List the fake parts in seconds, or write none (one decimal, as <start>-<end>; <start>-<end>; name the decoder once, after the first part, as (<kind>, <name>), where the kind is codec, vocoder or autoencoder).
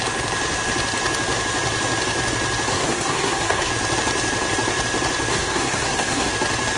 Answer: 2.7-3.7 (codec, SNAC); 5.3-6.3